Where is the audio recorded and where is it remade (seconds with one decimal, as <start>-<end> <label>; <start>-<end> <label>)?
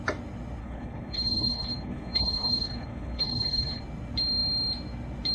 0.0-0.6 recorded; 0.6-3.8 remade; 3.8-5.3 recorded